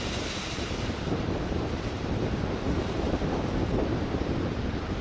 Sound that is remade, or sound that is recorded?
remade